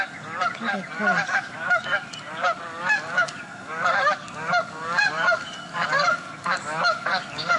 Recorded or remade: remade